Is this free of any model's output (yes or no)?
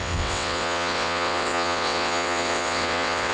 no